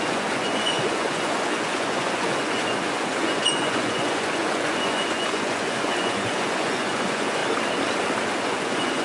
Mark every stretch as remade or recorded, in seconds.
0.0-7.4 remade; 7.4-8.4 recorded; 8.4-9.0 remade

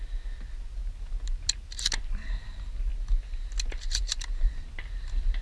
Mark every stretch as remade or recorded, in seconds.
0.0-5.4 recorded

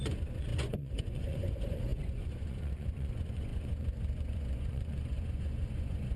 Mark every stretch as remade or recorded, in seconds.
0.0-6.2 remade

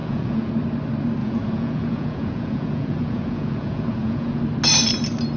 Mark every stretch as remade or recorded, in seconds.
0.0-0.5 remade; 0.5-1.2 recorded; 1.2-4.4 remade; 4.4-5.4 recorded

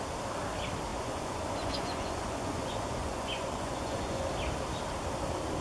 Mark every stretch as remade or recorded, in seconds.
0.0-0.9 recorded; 0.9-4.3 remade; 4.3-5.6 recorded

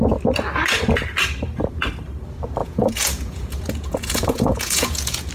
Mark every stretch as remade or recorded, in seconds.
0.0-2.6 recorded; 2.6-5.3 remade

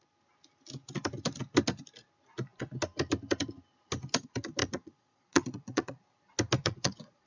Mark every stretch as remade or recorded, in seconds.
0.0-4.6 recorded; 4.6-6.0 remade; 6.0-6.6 recorded; 6.6-7.3 remade